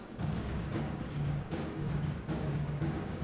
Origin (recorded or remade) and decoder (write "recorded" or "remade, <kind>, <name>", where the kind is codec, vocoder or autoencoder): remade, codec, DAC